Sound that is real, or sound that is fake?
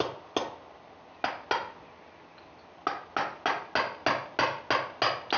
real